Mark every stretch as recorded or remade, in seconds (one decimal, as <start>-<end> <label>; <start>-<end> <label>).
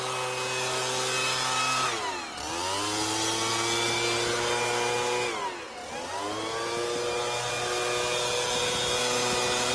0.0-9.7 recorded